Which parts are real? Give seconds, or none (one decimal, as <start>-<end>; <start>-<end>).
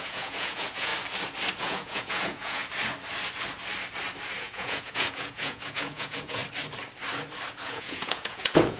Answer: 0.9-1.6; 2.6-4.4; 6.4-7.5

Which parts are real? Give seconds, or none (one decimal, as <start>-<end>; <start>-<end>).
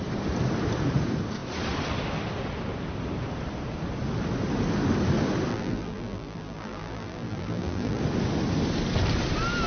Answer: 0.0-5.5; 8.0-9.7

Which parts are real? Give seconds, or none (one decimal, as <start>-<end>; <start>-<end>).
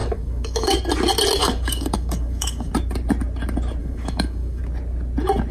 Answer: 0.8-1.4; 2.7-3.8; 4.6-5.5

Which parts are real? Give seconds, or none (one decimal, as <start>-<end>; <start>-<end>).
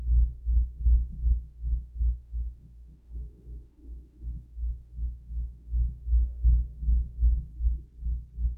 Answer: 7.5-8.6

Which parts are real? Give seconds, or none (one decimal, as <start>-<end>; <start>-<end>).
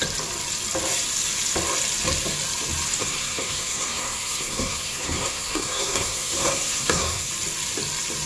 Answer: 0.0-3.0; 7.3-8.3